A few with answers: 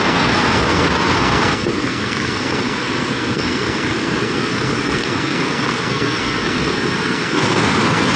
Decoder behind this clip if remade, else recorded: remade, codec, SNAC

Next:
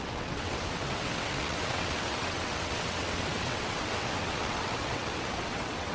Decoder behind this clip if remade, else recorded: remade, vocoder, WaveNeXt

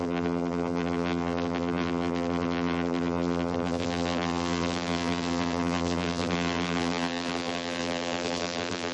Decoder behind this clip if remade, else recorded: remade, vocoder, BigVGAN v2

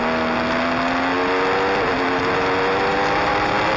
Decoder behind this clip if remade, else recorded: recorded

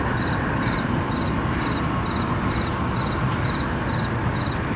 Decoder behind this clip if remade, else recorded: recorded